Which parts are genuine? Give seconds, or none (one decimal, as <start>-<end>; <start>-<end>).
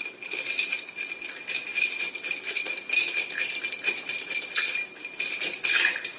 0.0-6.2